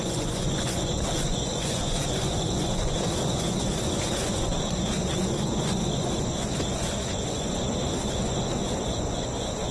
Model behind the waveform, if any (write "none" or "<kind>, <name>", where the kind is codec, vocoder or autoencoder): vocoder, Vocos